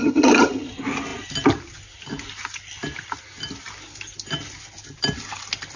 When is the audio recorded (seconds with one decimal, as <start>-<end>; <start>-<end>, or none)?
0.7-5.8